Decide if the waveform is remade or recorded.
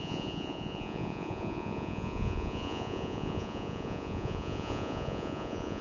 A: remade